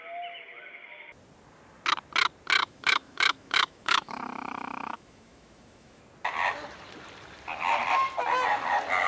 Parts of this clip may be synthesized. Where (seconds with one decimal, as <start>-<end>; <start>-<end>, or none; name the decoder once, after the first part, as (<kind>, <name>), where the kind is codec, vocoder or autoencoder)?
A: 2.6-6.0 (autoencoder, DAC-VAE)